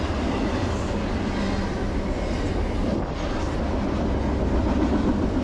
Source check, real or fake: real